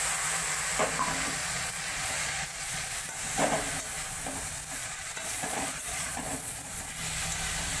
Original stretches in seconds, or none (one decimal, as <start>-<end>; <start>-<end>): 0.0-1.4; 2.9-4.8; 6.8-7.8